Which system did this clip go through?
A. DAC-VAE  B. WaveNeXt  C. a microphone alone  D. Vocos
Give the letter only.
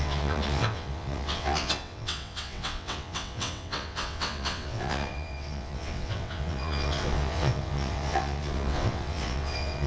B